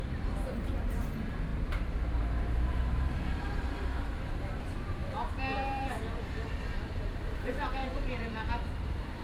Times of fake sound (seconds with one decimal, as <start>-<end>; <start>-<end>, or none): 0.0-9.2

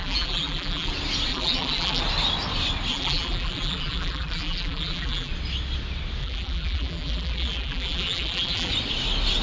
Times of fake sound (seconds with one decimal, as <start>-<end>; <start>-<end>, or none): 0.0-0.9; 1.3-2.0; 2.9-5.3; 6.2-8.7

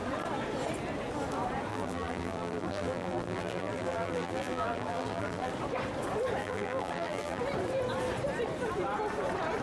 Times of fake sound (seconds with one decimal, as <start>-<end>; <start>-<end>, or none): 1.7-5.5; 6.4-7.4

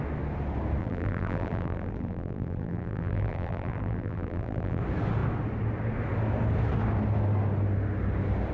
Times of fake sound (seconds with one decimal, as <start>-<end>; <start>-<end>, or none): 0.8-4.8